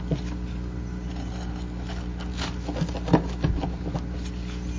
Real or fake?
real